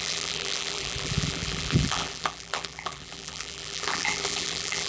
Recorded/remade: remade